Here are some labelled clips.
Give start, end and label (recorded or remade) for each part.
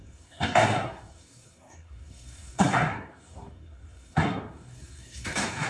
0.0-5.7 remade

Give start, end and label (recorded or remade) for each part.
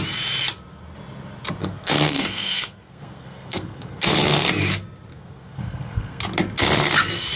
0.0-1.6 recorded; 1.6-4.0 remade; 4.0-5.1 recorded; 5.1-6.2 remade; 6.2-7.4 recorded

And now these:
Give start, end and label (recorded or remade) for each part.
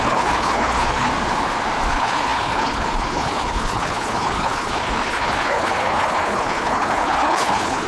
0.0-1.1 remade; 1.1-1.9 recorded; 1.9-7.9 remade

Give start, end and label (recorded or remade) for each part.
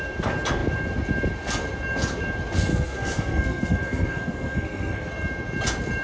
0.0-2.7 recorded; 2.7-5.1 remade; 5.1-6.0 recorded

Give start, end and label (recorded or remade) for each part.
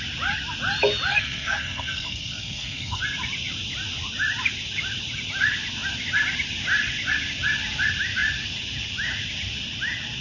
0.0-1.1 recorded; 1.1-3.0 remade; 3.0-10.2 recorded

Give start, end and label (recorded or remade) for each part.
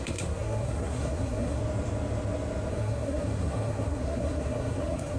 0.0-1.6 remade; 1.6-2.7 recorded; 2.7-5.2 remade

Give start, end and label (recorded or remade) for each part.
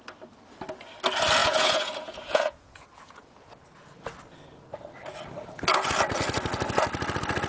0.0-1.4 recorded; 1.4-3.5 remade; 3.5-7.5 recorded